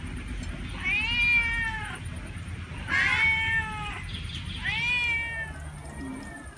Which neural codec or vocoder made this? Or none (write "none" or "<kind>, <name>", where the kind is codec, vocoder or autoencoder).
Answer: none